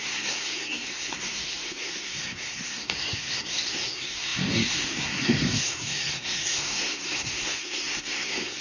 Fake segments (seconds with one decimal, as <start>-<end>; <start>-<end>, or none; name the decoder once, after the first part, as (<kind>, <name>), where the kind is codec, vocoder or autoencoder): 0.0-8.6 (codec, SNAC)